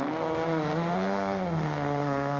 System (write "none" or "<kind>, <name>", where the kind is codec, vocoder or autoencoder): codec, SNAC